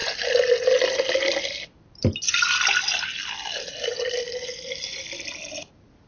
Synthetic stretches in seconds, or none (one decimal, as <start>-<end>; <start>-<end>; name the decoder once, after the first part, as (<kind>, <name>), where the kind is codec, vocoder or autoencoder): none